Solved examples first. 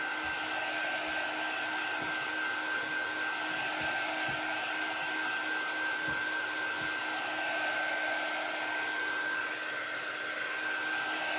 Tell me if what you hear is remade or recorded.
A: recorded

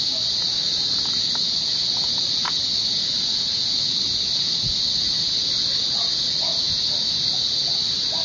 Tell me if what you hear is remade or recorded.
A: recorded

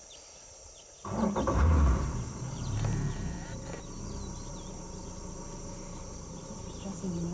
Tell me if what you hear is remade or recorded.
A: recorded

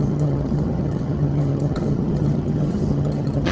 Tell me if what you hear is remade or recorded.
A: remade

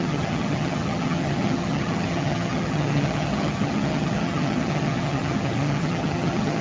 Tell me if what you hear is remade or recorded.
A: remade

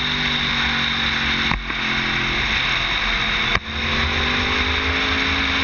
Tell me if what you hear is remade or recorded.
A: recorded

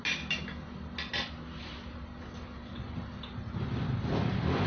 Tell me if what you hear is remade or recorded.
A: recorded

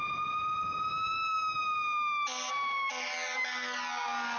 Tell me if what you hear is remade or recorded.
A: recorded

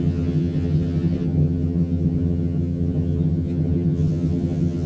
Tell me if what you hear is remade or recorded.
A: remade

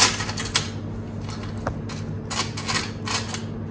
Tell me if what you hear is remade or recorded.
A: recorded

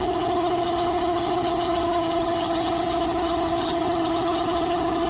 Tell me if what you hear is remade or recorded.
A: remade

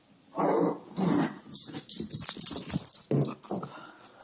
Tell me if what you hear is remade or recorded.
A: recorded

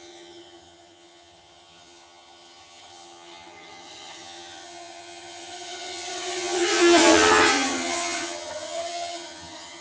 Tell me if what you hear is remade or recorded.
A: remade